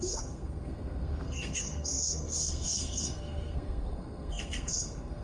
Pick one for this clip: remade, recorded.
remade